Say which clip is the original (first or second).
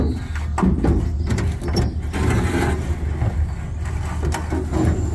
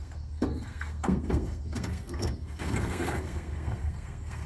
first